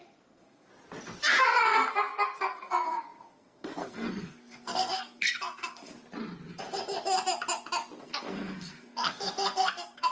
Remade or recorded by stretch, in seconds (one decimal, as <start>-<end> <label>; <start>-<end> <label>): 0.0-0.7 remade; 0.7-1.4 recorded; 1.4-6.0 remade; 6.0-8.0 recorded; 8.0-10.1 remade